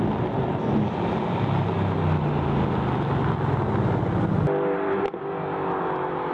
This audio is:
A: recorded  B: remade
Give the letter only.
A